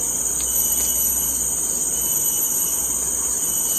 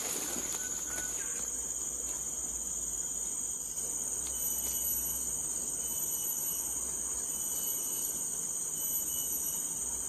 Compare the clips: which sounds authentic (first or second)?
second